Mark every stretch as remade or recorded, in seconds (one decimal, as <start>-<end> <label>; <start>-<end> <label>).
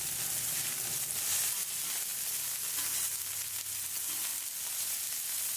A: 0.0-5.6 recorded